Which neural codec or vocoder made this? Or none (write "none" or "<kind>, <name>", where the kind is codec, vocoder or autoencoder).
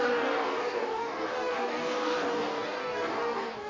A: codec, DAC